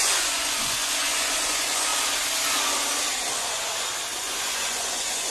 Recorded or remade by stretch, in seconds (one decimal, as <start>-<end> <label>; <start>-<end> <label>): 0.0-1.9 remade; 1.9-3.2 recorded; 3.2-3.7 remade; 3.7-4.2 recorded; 4.2-5.3 remade